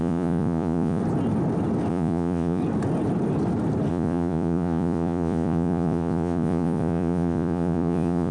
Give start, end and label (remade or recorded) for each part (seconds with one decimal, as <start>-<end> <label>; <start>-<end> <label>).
0.0-1.0 remade; 1.0-1.9 recorded; 1.9-2.6 remade; 2.6-3.9 recorded; 3.9-8.3 remade